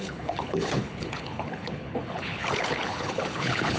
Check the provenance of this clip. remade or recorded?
remade